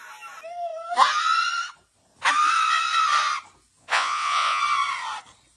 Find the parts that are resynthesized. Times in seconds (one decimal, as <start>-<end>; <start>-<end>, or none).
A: 3.8-4.6